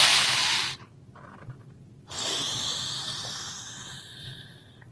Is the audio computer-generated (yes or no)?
no